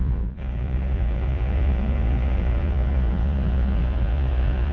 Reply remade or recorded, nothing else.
remade